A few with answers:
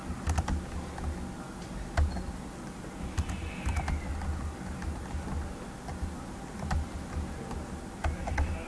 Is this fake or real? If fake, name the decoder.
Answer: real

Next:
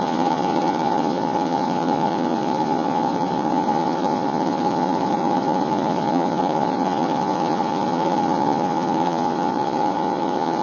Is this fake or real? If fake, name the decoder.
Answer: fake, vocoder, Vocos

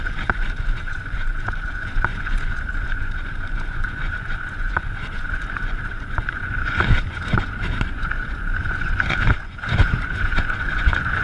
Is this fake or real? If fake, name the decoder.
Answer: fake, vocoder, Vocos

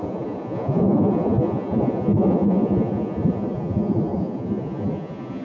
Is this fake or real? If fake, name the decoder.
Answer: fake, vocoder, Vocos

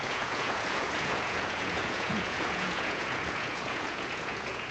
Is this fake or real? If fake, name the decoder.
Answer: fake, vocoder, Vocos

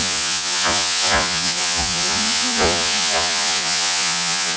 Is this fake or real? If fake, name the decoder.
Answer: fake, vocoder, Vocos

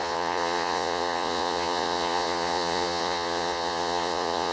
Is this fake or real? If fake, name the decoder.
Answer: fake, vocoder, Vocos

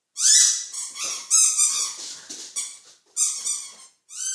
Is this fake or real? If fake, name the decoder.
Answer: real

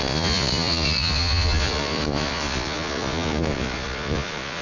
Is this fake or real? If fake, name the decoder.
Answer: fake, vocoder, Vocos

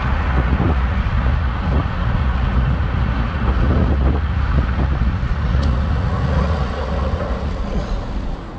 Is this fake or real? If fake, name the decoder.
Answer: fake, vocoder, Vocos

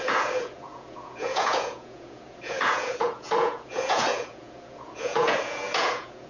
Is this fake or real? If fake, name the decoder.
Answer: fake, vocoder, Vocos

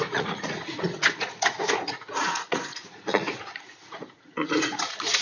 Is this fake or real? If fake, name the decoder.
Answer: fake, vocoder, Vocos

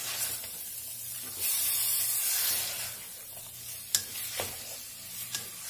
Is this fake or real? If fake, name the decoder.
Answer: real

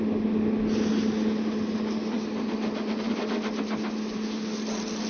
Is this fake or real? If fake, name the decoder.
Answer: real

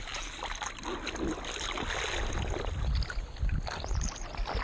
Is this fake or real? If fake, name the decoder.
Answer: real